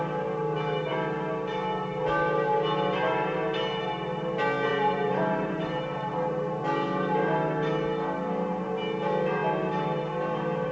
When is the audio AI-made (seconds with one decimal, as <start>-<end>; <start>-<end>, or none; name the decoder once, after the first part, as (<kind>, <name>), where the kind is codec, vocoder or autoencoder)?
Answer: 4.7-6.6 (vocoder, BigVGAN v2)